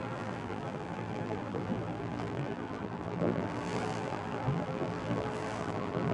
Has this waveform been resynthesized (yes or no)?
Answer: yes